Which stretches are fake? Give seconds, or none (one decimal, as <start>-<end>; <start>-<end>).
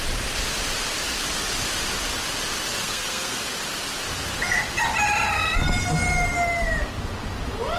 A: 2.8-3.4